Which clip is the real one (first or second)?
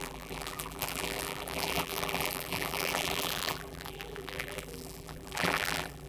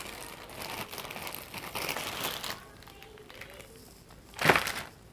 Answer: second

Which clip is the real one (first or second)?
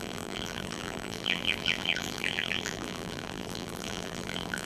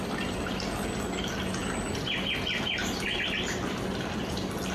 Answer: second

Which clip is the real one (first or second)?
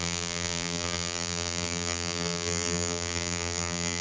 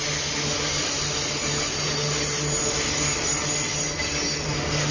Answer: second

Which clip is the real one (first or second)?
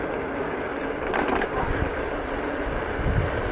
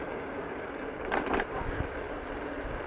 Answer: first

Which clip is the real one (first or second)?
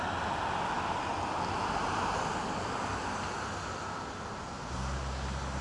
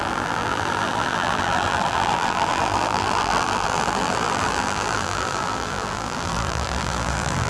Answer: first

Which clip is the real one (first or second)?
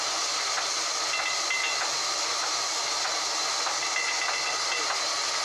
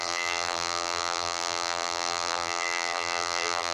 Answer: first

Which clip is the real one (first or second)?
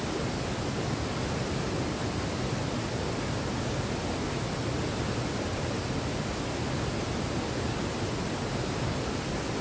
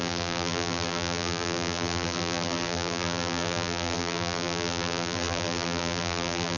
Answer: first